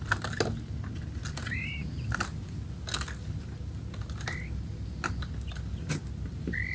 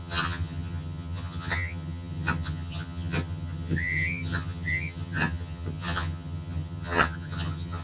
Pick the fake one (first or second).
second